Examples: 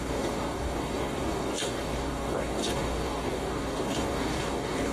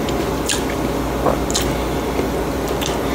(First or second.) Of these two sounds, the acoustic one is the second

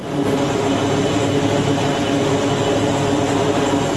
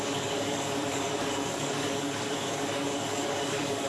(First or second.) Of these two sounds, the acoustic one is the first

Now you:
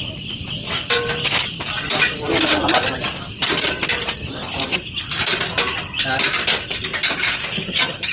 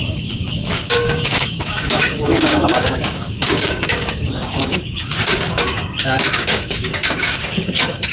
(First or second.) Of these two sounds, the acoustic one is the first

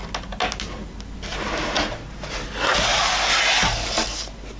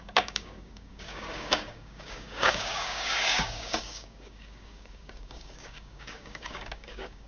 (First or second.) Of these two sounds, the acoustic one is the first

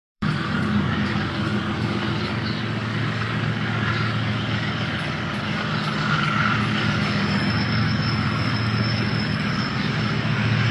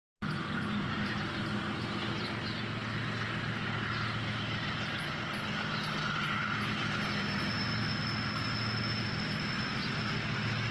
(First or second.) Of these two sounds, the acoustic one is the second